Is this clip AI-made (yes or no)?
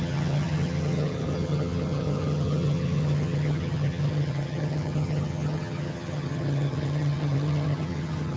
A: yes